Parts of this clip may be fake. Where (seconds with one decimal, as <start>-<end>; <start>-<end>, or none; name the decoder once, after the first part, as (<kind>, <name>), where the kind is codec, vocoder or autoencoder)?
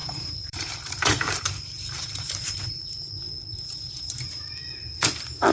0.0-3.1 (vocoder, BigVGAN v2); 3.5-4.2